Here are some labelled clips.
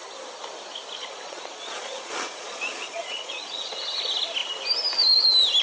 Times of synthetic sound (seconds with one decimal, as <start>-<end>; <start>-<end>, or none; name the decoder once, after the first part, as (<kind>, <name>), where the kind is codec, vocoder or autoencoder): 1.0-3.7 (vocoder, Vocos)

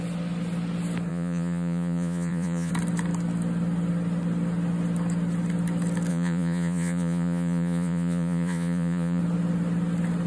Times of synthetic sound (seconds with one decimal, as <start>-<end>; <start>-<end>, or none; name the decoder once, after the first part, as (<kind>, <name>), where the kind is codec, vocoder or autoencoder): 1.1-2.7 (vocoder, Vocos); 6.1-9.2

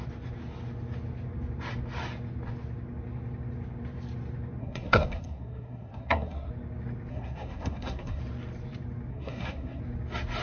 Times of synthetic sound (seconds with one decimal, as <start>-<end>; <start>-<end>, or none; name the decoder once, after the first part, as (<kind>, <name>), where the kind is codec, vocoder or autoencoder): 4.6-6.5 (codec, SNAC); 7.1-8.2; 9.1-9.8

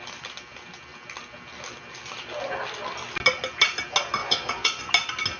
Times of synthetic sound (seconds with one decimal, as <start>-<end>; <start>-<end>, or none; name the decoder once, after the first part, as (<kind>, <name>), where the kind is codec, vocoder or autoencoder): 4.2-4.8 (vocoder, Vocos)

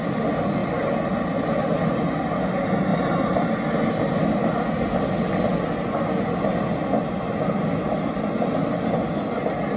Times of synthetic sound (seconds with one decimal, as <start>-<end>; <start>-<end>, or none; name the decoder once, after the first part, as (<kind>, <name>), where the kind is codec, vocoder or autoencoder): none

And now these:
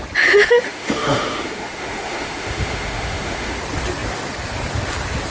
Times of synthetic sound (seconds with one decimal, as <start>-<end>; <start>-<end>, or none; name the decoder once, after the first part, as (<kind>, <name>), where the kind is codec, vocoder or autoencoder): 0.4-3.6 (autoencoder, DAC-VAE)